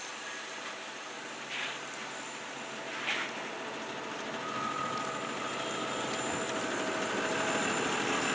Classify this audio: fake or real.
real